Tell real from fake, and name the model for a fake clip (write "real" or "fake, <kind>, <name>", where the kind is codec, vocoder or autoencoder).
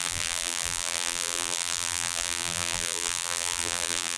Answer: fake, vocoder, BigVGAN v2